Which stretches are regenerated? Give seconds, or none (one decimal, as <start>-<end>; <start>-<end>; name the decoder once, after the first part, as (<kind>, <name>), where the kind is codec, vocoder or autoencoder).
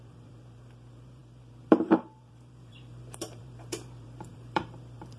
0.0-5.2 (vocoder, BigVGAN v2)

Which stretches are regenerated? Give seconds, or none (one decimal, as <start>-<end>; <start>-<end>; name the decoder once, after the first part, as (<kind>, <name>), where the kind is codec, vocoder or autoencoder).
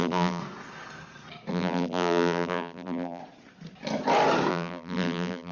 0.0-0.4 (vocoder, BigVGAN v2); 1.5-3.2; 4.5-5.5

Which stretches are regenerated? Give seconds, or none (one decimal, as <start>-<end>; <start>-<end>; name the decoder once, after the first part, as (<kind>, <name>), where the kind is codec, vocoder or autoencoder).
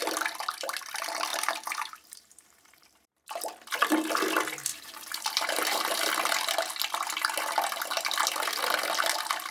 1.3-3.4 (vocoder, BigVGAN v2); 4.7-6.1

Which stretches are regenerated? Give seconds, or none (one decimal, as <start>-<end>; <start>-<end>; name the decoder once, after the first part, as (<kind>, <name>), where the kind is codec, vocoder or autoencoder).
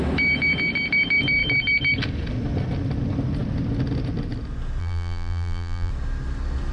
4.8-5.9 (vocoder, BigVGAN v2)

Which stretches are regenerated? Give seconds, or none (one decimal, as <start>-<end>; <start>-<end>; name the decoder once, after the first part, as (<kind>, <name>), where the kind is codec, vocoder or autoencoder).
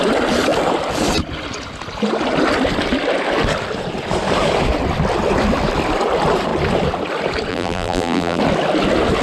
7.5-8.4 (vocoder, BigVGAN v2)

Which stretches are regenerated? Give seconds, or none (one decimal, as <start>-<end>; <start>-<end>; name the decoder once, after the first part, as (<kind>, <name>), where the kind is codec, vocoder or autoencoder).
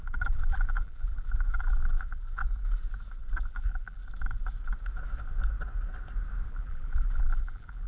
0.0-2.4 (vocoder, BigVGAN v2); 3.5-4.0; 6.5-7.9